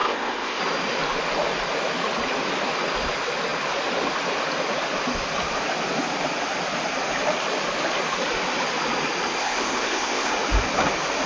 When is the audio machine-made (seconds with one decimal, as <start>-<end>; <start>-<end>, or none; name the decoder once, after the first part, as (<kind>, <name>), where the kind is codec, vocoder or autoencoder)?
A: 0.0-0.6 (codec, ZipCodec); 9.4-10.3